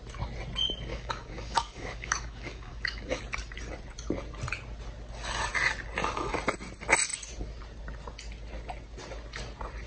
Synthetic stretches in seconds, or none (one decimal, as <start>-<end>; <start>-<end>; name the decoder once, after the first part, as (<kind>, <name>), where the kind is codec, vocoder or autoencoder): 0.9-3.2 (codec, DAC)